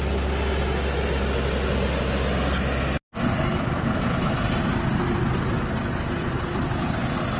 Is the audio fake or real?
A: real